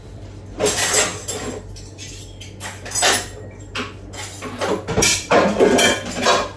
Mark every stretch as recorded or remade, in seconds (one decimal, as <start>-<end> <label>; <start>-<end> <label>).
0.0-1.1 remade; 1.1-5.1 recorded; 5.1-6.6 remade